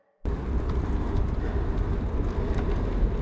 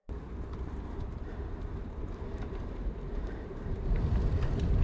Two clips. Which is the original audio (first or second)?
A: first